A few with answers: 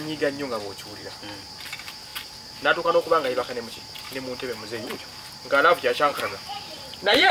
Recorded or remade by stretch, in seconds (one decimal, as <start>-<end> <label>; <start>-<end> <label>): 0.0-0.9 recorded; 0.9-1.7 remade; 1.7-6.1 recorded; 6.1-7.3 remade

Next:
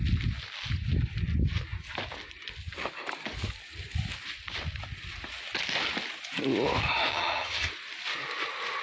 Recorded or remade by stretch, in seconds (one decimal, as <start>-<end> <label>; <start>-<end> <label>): 0.0-7.1 recorded; 7.1-7.7 remade; 7.7-8.8 recorded

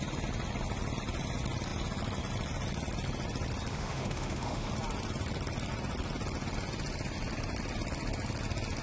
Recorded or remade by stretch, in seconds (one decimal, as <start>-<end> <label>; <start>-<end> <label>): 0.0-3.7 recorded; 3.7-4.7 remade; 4.7-8.8 recorded